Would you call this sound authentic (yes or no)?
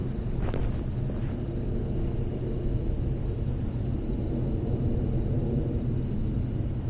yes